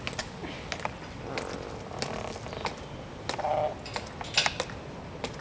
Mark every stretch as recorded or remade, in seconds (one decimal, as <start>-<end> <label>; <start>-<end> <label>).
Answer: 0.0-5.4 recorded

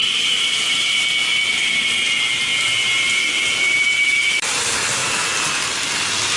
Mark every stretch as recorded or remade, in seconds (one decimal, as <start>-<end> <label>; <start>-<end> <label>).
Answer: 0.0-1.0 remade; 1.0-6.4 recorded

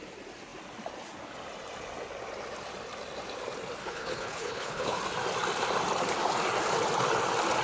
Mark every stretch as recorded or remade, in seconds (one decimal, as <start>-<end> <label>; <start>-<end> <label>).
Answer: 0.0-3.8 recorded; 3.8-5.0 remade; 5.0-7.6 recorded

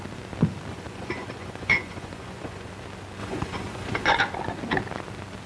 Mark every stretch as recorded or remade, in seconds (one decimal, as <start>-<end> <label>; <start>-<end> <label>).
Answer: 0.0-0.7 recorded; 0.7-2.7 remade; 2.7-3.2 recorded; 3.2-4.2 remade; 4.2-5.5 recorded